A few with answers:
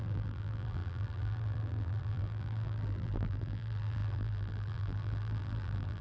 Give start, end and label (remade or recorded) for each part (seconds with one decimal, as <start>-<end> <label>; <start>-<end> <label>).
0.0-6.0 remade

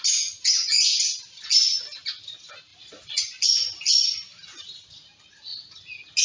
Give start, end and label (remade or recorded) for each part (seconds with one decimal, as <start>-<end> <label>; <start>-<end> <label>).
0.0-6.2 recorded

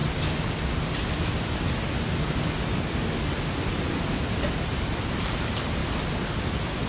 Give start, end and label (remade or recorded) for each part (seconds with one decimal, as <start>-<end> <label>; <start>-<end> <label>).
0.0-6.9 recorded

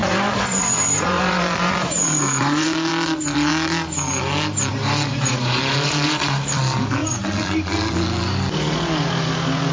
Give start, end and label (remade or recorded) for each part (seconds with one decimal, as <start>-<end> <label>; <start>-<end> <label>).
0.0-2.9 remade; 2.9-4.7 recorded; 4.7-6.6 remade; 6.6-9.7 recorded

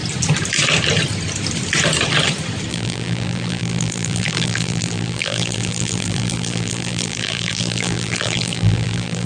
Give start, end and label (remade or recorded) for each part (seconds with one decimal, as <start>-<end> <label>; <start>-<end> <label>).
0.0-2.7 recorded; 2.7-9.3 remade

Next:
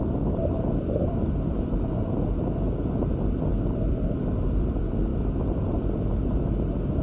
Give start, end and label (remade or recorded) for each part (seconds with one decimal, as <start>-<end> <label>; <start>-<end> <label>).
0.0-2.0 remade; 2.0-2.8 recorded; 2.8-7.0 remade

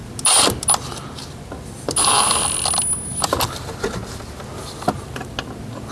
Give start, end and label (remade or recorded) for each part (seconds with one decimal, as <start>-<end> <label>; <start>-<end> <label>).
0.0-5.9 recorded